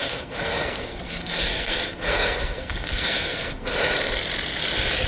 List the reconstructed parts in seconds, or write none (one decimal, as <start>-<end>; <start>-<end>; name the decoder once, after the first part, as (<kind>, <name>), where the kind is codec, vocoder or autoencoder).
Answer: 0.0-3.7 (codec, SNAC)